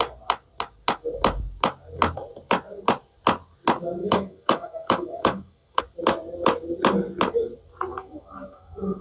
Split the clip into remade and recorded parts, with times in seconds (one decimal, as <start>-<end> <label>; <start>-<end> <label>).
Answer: 0.0-4.0 recorded; 4.0-5.8 remade; 5.8-7.9 recorded; 7.9-9.0 remade